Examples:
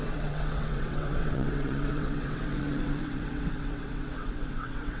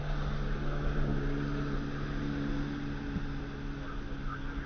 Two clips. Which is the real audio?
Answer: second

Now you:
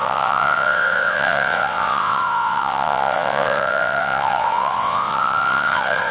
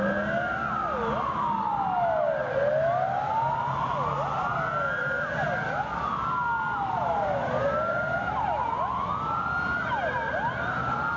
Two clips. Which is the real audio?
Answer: second